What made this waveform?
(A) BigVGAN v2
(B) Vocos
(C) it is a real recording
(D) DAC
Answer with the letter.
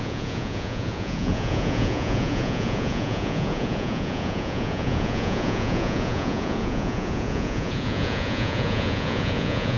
B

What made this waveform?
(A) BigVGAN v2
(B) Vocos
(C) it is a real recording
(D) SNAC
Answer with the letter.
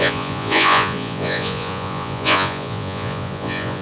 B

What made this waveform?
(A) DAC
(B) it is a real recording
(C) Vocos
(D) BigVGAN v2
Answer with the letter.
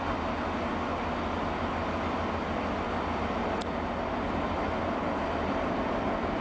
B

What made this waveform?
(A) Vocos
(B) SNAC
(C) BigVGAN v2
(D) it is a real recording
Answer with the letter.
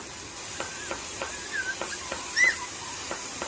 D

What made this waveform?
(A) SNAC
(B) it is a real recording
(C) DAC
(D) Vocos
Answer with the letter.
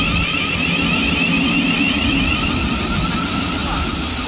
B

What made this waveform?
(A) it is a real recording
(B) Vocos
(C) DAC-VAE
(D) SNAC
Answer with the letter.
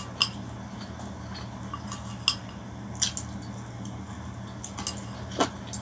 A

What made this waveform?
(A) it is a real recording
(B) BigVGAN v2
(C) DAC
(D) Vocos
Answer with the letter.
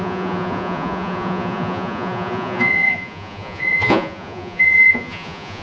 D